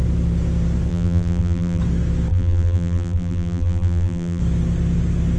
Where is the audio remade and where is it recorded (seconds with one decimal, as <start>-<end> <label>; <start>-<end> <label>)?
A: 0.0-0.9 recorded; 0.9-1.8 remade; 1.8-2.3 recorded; 2.3-4.4 remade; 4.4-5.4 recorded